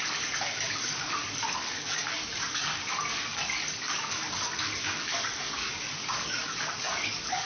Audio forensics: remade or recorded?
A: remade